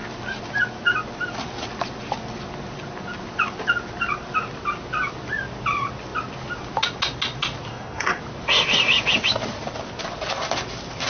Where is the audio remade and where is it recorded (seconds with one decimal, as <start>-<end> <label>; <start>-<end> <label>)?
0.0-7.7 recorded; 7.7-8.2 remade; 8.2-11.1 recorded